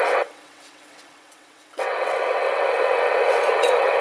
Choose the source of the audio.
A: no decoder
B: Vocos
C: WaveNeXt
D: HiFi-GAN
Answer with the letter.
C